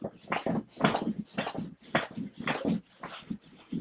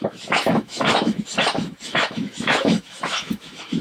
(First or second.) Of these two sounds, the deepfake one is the second